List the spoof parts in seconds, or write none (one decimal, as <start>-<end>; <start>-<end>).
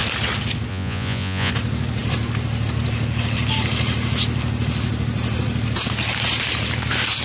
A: 0.7-1.5